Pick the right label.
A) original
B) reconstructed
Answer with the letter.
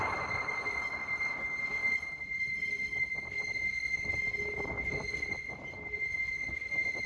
B